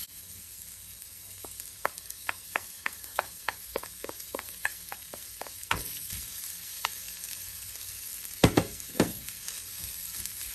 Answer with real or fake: fake